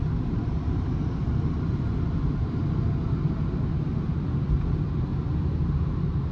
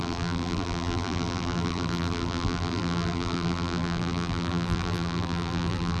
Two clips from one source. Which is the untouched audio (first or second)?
first